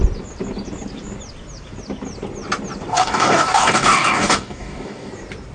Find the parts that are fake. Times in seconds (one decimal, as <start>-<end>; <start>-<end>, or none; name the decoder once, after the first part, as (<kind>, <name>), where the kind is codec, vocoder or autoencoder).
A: 2.9-5.1 (codec, DAC)